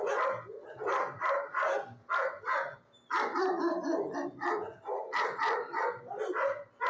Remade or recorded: recorded